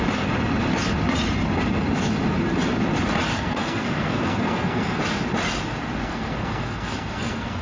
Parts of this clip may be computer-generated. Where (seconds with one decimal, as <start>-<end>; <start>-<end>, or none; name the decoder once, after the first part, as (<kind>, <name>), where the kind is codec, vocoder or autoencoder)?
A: 3.3-5.0 (codec, SNAC); 6.0-7.6